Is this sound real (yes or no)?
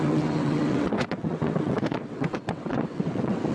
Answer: no